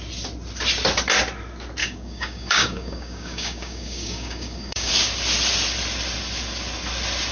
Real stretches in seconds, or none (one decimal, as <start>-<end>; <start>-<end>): 0.0-1.8; 4.9-7.3